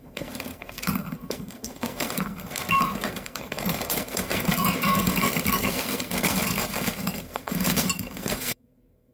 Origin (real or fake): fake